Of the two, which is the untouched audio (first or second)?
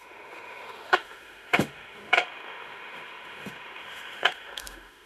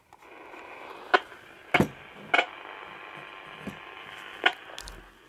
second